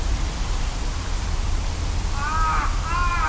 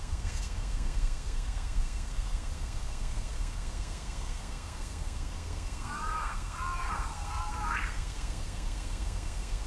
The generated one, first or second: second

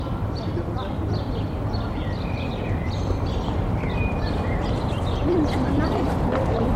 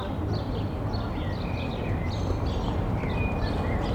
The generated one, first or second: first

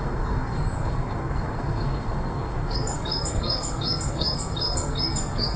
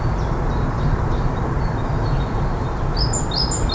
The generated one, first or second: first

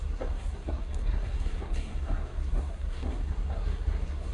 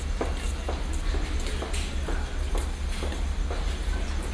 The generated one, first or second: first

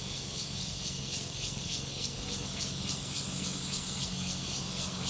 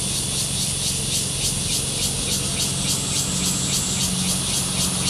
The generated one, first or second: first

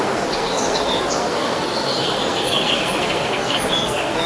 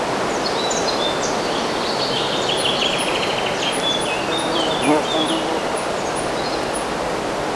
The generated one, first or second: first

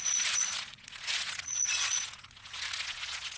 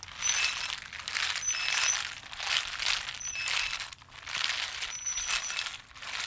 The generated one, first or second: first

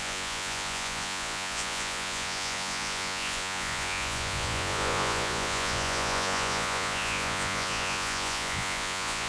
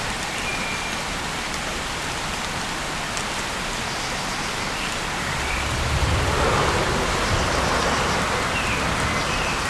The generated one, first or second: first